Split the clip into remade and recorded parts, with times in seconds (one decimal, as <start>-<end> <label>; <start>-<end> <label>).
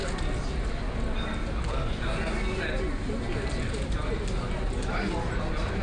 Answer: 0.0-5.8 recorded